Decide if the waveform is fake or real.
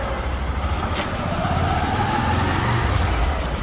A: real